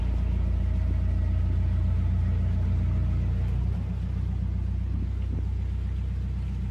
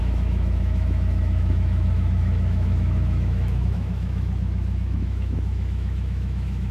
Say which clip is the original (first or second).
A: first